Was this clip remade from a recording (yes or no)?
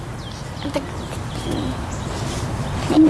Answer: no